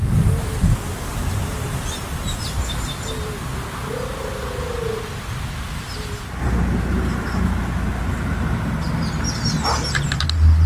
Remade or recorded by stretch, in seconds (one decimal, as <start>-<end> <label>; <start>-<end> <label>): 0.0-10.7 recorded